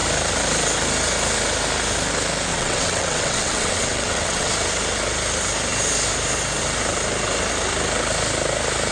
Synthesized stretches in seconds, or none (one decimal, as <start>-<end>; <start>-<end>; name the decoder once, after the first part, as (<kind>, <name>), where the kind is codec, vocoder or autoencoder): 2.5-4.5 (vocoder, WaveNeXt)